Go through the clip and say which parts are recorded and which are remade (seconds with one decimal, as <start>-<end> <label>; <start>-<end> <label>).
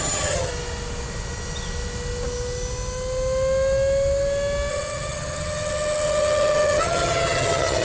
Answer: 0.0-0.5 remade; 0.5-4.7 recorded; 4.7-7.8 remade